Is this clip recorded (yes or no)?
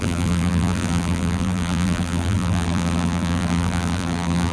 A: no